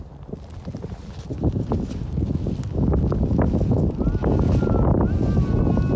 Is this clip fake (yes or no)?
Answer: no